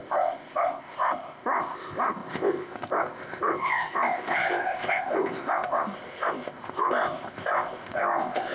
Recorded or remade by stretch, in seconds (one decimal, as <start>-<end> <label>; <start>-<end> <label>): 0.0-8.5 remade